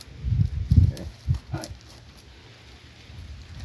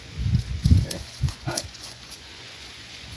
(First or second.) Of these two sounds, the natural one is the first